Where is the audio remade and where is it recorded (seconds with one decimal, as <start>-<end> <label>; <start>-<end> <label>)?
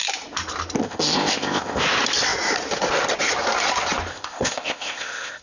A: 0.0-0.8 recorded; 0.8-1.8 remade; 1.8-4.1 recorded; 4.1-5.4 remade